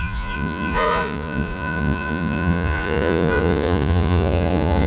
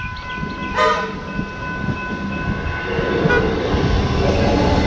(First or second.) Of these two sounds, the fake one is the first